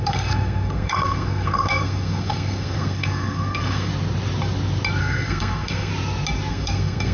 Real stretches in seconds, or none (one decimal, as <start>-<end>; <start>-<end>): 3.9-5.0; 5.9-6.5